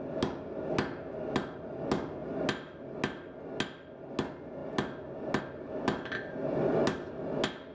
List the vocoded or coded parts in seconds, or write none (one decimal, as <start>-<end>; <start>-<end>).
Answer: none

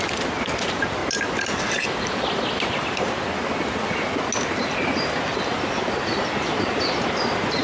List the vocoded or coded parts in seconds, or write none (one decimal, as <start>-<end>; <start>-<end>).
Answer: none

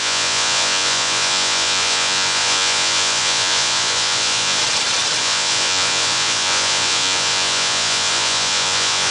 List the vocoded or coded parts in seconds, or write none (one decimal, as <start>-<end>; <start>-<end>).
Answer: 0.0-4.6; 5.2-9.1

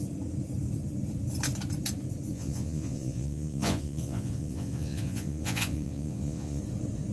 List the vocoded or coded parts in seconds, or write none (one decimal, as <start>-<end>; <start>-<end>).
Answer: 2.3-6.6

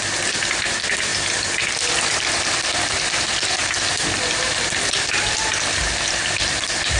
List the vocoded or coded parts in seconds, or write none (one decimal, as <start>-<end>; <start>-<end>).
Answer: 1.1-2.5; 3.6-6.1

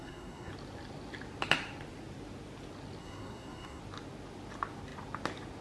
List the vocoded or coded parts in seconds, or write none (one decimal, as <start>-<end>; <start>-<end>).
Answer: 0.0-0.5; 3.0-3.8